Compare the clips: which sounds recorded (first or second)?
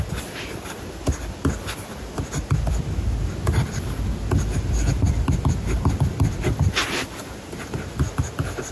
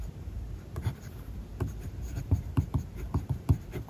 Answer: first